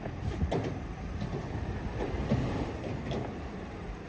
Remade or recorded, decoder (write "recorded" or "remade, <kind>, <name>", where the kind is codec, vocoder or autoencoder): remade, vocoder, BigVGAN v2